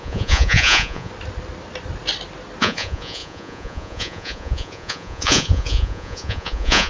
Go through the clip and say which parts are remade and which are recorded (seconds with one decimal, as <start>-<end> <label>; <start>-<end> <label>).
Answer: 0.0-1.1 remade; 1.1-2.6 recorded; 2.6-6.9 remade